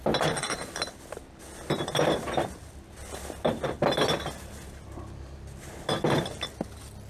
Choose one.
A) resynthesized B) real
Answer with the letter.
B